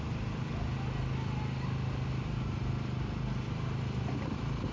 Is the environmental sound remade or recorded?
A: recorded